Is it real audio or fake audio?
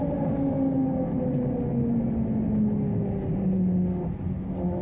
real